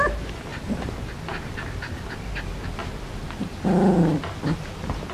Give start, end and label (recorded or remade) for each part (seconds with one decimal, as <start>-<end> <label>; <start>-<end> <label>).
0.0-5.1 recorded